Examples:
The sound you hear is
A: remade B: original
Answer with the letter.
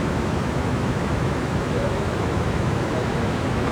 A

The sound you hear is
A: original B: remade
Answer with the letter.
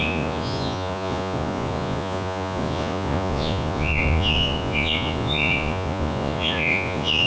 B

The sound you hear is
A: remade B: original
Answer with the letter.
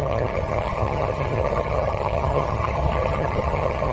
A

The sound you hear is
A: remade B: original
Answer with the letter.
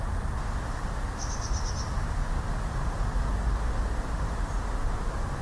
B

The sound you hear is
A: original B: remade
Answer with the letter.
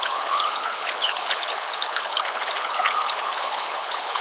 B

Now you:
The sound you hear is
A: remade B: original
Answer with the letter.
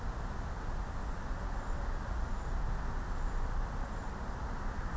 B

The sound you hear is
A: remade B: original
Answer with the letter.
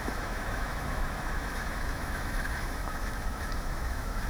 A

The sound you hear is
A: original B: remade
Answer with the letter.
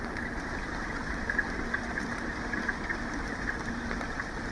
A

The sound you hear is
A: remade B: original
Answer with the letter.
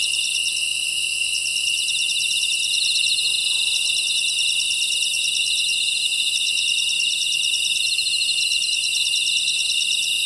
B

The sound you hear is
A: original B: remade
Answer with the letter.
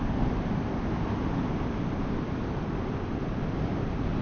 A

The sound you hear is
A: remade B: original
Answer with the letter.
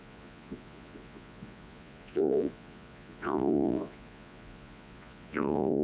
A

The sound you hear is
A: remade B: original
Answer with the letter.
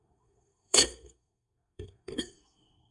A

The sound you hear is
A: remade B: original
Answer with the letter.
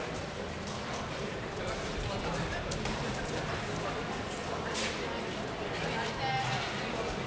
B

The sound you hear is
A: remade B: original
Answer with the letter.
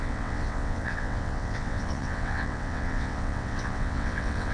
A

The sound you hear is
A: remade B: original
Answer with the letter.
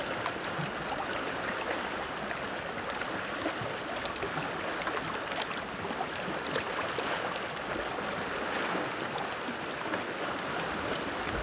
B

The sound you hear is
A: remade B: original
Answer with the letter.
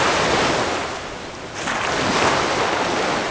B